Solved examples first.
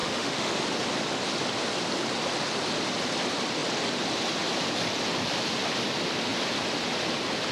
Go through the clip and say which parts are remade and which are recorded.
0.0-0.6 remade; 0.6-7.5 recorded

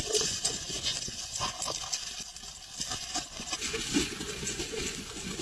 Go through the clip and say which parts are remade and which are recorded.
0.0-1.6 remade; 1.6-3.0 recorded; 3.0-5.4 remade

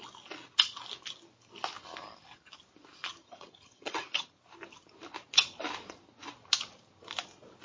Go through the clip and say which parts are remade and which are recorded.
0.0-3.2 recorded; 3.2-4.2 remade; 4.2-7.6 recorded

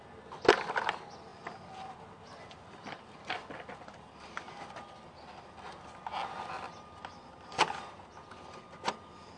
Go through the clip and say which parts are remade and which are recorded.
0.0-9.4 recorded

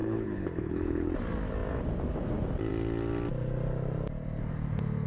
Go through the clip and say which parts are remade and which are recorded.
0.0-1.1 remade; 1.1-5.1 recorded